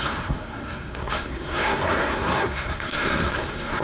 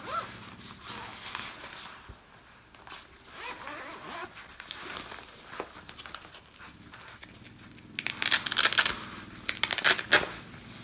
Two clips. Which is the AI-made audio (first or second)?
first